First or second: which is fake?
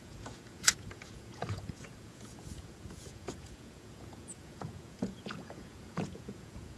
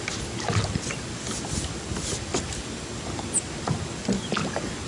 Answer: first